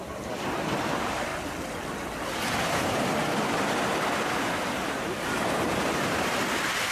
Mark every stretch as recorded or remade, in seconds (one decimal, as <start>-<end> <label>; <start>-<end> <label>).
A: 0.0-1.3 remade; 1.3-5.4 recorded; 5.4-6.9 remade